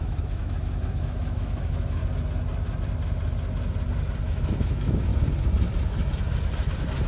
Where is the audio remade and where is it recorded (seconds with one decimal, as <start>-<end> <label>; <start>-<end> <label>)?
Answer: 0.0-2.0 remade; 2.0-4.2 recorded; 4.2-5.1 remade; 5.1-7.1 recorded